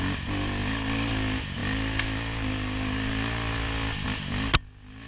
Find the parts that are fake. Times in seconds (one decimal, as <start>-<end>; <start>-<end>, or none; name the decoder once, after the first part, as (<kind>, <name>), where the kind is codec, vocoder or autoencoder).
none